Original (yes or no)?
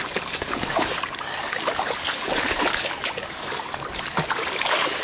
no